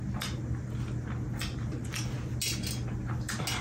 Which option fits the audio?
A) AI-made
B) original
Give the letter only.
B